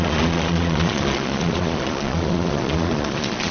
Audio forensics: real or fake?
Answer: fake